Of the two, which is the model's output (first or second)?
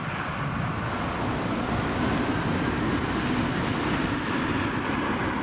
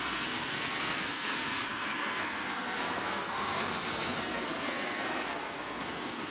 second